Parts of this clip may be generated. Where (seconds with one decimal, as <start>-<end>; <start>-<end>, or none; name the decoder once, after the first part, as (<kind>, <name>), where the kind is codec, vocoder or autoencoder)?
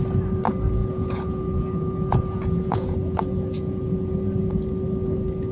0.8-4.1 (vocoder, Vocos)